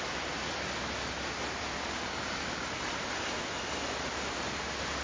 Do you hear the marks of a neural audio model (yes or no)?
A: no